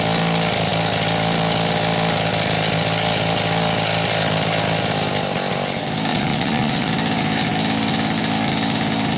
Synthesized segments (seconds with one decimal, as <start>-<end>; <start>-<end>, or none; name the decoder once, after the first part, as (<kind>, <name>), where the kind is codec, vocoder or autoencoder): 6.1-6.9 (vocoder, Vocos)